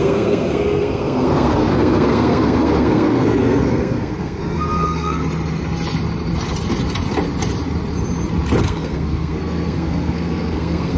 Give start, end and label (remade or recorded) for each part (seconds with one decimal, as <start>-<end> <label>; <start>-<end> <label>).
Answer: 0.0-5.2 remade; 5.2-8.6 recorded; 8.6-11.0 remade